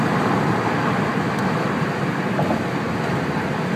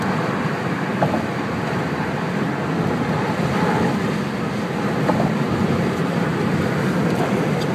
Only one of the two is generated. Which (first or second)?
second